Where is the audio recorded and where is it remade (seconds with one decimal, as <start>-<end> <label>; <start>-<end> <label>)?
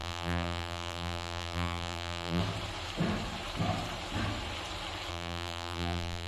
0.0-2.4 remade; 2.4-5.1 recorded; 5.1-6.3 remade